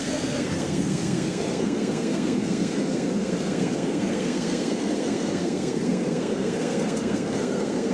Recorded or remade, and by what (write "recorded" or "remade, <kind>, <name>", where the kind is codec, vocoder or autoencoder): remade, codec, SNAC